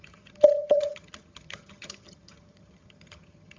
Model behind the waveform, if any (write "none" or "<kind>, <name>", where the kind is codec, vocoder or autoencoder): vocoder, HiFi-GAN